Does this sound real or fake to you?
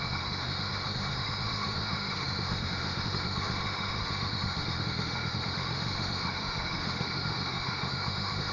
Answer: fake